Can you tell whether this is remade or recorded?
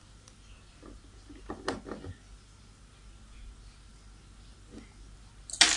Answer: recorded